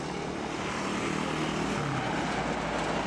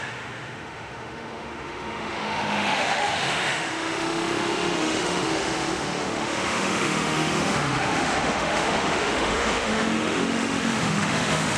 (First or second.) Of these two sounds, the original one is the first